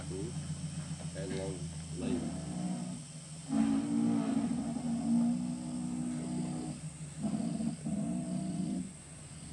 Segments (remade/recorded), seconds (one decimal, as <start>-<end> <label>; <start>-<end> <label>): 0.0-8.5 recorded; 8.5-9.5 remade